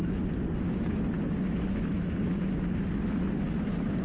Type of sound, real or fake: real